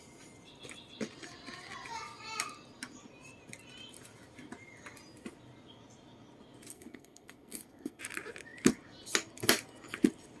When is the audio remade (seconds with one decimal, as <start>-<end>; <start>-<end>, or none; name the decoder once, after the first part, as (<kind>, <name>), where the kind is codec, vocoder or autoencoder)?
6.7-8.0 (codec, SNAC)